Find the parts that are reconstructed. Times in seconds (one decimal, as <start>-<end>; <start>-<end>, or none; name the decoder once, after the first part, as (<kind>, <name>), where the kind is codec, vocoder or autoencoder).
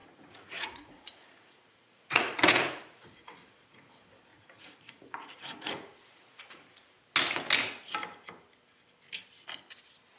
0.0-3.9 (vocoder, Vocos); 4.3-7.0